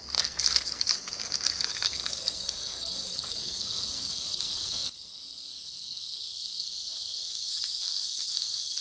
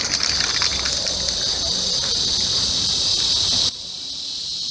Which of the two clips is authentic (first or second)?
second